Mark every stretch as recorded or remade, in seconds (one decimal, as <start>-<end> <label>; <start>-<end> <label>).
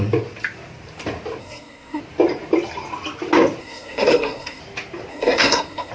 0.0-1.4 recorded; 1.4-2.0 remade; 2.0-3.6 recorded; 3.6-4.6 remade; 4.6-5.1 recorded; 5.1-5.9 remade